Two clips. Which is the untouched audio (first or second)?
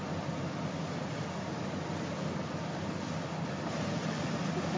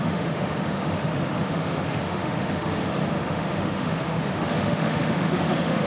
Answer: first